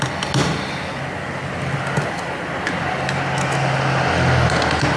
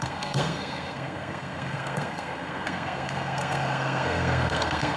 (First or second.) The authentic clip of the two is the first